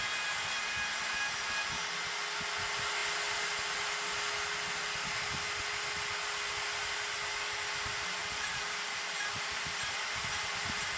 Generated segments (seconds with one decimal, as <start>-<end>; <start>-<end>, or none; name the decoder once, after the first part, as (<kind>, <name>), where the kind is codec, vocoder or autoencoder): 8.2-9.7 (vocoder, BigVGAN v2)